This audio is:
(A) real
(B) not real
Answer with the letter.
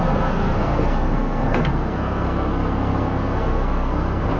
B